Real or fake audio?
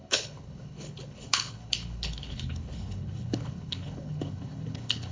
fake